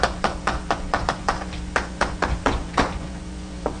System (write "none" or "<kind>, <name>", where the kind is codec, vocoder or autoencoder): vocoder, Vocos